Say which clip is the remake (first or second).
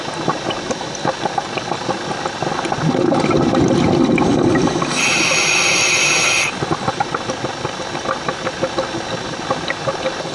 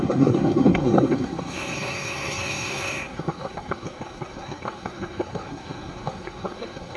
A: second